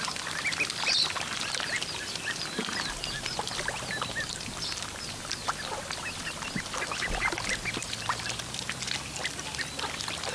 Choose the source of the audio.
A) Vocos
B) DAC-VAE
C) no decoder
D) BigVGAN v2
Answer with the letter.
C